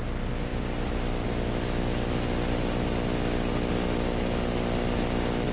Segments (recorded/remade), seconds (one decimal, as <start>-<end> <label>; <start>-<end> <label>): 0.0-0.5 recorded; 0.5-1.8 remade; 1.8-5.5 recorded